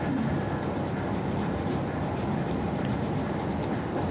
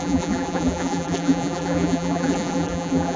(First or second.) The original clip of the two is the first